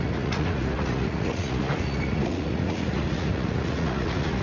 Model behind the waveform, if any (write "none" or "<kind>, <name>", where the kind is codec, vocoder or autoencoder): vocoder, Vocos